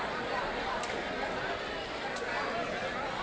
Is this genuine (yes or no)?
no